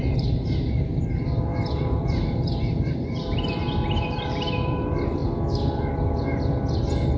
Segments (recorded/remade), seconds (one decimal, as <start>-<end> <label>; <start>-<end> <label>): 0.0-3.6 remade; 3.6-4.1 recorded; 4.1-5.2 remade; 5.2-7.2 recorded